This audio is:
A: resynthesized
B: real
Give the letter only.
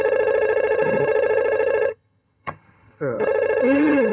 A